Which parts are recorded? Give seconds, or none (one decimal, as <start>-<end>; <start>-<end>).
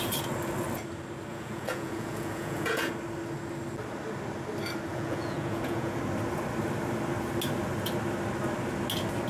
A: 0.0-1.3; 2.9-4.9; 6.0-9.3